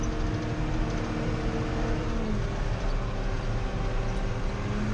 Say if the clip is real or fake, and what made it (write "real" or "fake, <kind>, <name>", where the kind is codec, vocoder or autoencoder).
real